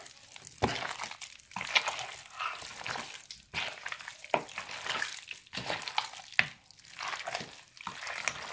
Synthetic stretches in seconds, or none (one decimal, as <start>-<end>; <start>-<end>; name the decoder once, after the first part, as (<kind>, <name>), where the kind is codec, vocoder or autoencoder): none